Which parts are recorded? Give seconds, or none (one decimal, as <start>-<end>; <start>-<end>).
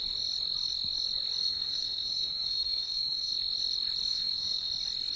0.0-1.4; 3.3-4.1; 4.7-5.2